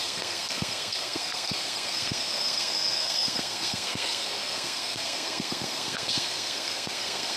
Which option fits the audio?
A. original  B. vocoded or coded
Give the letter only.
B